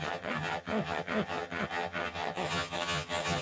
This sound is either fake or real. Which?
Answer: fake